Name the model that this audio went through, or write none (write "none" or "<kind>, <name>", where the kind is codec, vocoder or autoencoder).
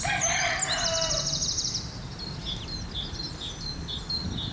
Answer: none